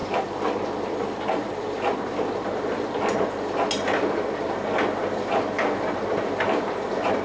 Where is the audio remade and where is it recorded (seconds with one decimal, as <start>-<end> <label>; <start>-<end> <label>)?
0.0-7.2 recorded